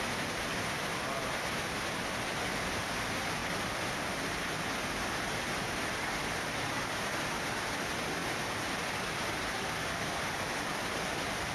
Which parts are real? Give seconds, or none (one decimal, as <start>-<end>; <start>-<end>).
0.0-0.9; 1.6-11.5

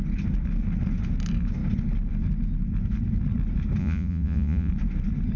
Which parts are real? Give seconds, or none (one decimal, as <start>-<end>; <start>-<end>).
0.0-3.8; 4.7-5.4